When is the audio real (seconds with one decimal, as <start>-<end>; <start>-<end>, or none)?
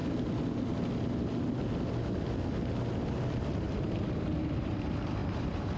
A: 0.0-3.0